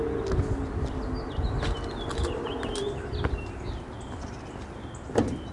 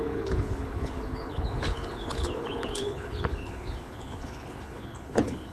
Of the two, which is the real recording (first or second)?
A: first